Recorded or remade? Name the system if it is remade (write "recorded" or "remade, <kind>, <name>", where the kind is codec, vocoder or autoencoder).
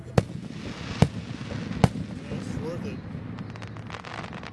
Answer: recorded